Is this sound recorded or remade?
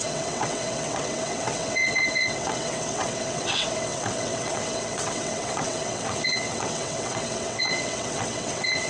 remade